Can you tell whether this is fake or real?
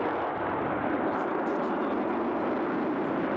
real